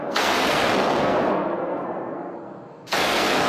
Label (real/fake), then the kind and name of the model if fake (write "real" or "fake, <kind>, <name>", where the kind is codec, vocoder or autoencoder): fake, codec, SNAC